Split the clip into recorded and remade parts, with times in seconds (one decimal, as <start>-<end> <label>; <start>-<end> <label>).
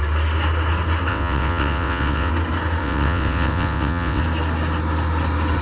0.0-1.1 recorded; 1.1-2.3 remade; 2.3-2.8 recorded; 2.8-4.2 remade; 4.2-5.6 recorded